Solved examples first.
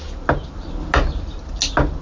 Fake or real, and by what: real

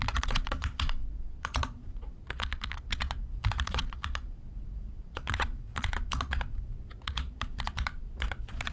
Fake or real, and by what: fake, vocoder, Vocos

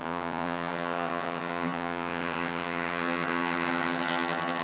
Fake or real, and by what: fake, vocoder, HiFi-GAN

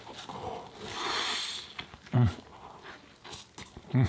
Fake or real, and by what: real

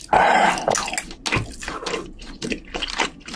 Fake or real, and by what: real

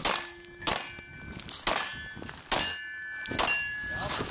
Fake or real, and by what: real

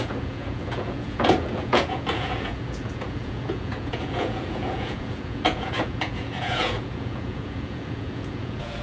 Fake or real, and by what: fake, vocoder, Vocos